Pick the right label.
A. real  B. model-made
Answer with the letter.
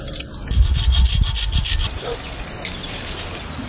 A